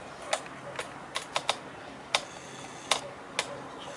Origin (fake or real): real